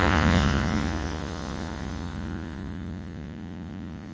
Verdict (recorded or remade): remade